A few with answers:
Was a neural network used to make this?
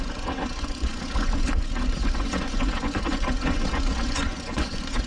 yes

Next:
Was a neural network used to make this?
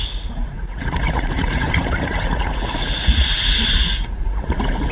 yes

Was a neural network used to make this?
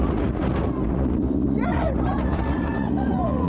yes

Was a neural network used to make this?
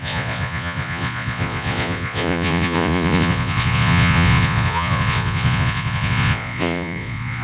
yes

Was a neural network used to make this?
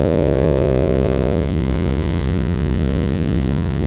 yes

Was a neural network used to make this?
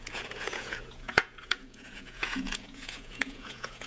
yes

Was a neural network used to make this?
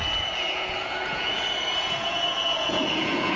yes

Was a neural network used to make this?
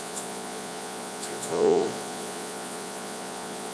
yes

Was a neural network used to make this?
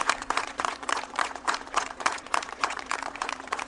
yes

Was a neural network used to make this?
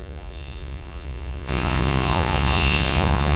yes